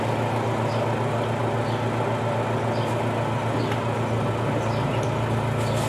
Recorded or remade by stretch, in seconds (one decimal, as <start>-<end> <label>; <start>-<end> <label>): 0.0-5.9 recorded